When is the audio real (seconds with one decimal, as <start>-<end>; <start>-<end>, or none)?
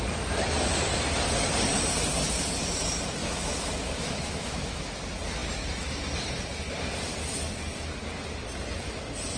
0.0-3.2; 4.8-9.4